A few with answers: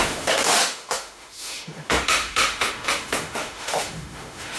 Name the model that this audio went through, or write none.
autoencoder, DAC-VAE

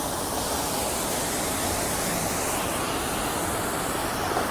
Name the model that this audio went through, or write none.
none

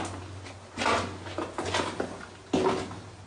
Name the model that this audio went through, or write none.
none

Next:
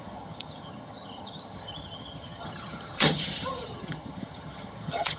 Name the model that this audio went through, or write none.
vocoder, HiFi-GAN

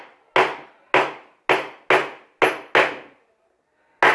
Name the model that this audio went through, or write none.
none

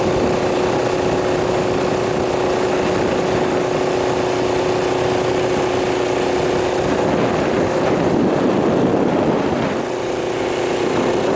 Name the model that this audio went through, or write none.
none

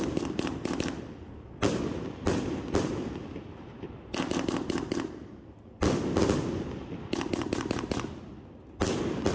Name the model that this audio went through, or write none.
none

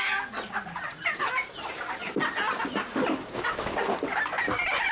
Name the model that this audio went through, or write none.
none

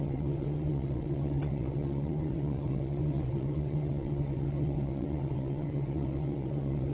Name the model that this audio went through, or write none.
vocoder, WaveNeXt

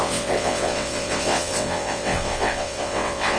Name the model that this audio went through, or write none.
vocoder, WaveNeXt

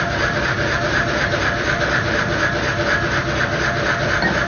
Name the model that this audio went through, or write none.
none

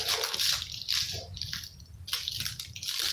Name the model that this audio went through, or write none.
none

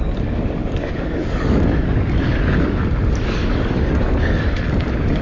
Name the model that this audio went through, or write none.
codec, DAC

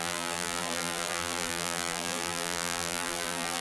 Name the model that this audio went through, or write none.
vocoder, BigVGAN v2